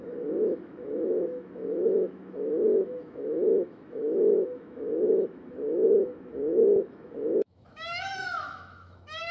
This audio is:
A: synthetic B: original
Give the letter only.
A